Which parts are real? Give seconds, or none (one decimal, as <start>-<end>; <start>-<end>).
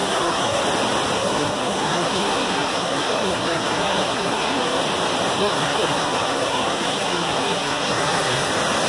0.6-1.2; 4.8-5.4; 8.5-8.9